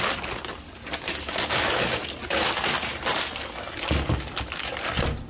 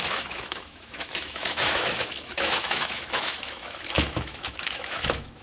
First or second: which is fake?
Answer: second